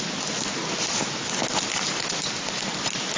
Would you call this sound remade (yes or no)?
no